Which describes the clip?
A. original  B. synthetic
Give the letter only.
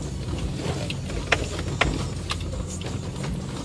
A